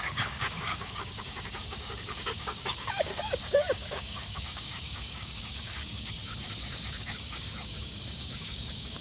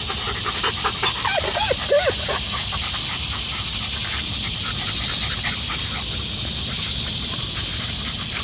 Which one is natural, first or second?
second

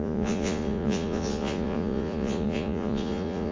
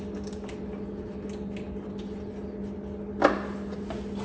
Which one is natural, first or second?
second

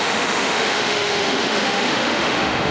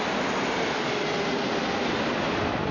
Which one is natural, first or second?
second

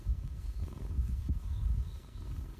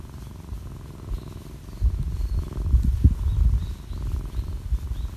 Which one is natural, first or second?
second